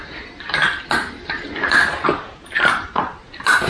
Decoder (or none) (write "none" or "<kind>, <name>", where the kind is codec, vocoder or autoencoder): vocoder, BigVGAN v2